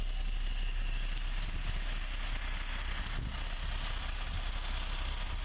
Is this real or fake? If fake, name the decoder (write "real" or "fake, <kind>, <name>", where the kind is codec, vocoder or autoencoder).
real